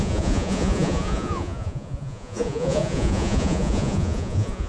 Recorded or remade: remade